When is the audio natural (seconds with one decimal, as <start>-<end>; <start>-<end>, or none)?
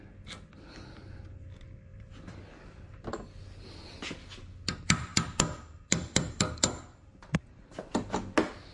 0.0-1.9; 2.4-5.1; 6.8-8.7